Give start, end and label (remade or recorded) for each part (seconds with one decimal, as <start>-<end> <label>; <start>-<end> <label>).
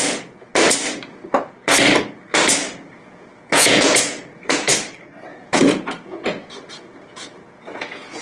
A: 0.0-0.5 remade; 0.5-2.8 recorded; 2.8-4.7 remade; 4.7-5.3 recorded; 5.3-8.2 remade